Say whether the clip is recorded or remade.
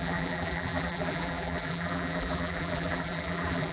remade